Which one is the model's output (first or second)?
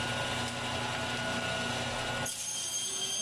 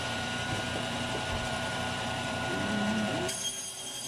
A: second